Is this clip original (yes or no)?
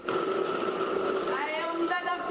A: yes